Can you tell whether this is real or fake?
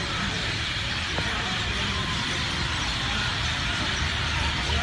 fake